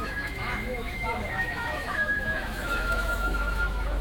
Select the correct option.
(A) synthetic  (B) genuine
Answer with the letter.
A